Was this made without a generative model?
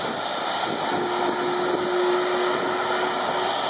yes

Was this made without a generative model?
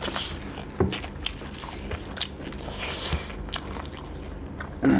yes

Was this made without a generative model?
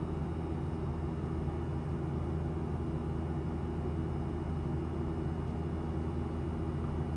yes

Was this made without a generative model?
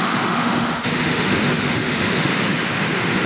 no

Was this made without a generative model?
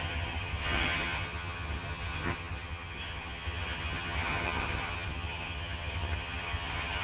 no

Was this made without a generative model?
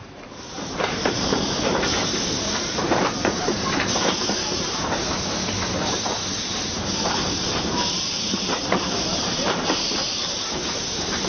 no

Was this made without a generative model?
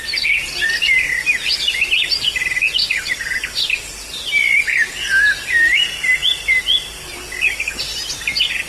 yes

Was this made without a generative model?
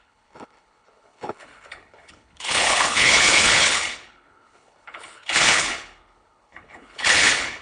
no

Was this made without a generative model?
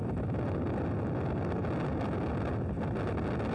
yes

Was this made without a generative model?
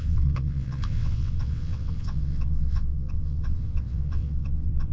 no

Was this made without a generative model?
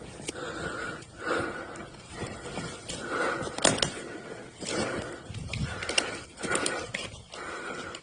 yes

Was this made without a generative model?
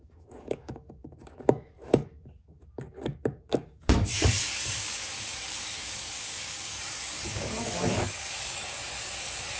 no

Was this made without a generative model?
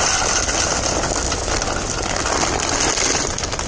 yes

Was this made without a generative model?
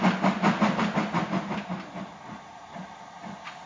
yes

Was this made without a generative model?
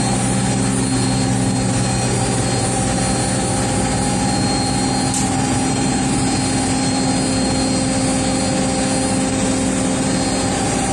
yes